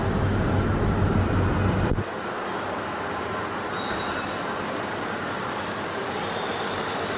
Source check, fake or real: real